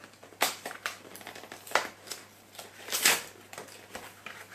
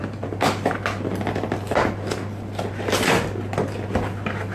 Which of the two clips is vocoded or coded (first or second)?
first